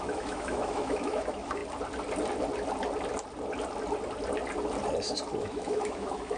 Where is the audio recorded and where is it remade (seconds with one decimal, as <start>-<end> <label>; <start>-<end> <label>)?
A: 0.0-1.6 remade; 1.6-5.4 recorded; 5.4-6.4 remade